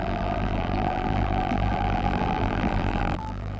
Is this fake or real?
fake